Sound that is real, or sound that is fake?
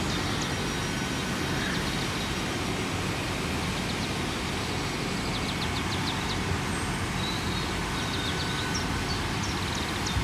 real